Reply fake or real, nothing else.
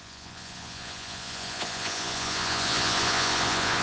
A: fake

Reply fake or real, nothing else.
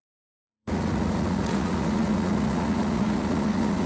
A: fake